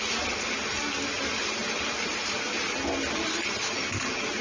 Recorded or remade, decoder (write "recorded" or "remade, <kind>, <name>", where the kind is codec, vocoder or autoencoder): recorded